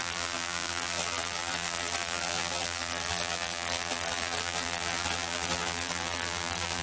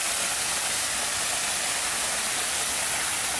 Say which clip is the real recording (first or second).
second